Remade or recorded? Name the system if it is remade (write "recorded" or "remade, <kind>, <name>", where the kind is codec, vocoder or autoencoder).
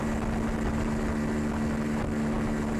recorded